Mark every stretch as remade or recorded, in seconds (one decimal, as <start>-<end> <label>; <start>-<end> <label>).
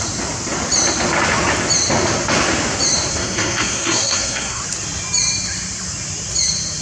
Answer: 0.0-3.1 recorded; 3.1-4.6 remade; 4.6-6.8 recorded